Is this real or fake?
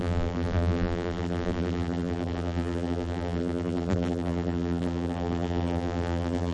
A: fake